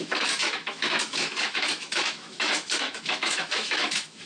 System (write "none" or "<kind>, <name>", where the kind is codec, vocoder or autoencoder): autoencoder, DAC-VAE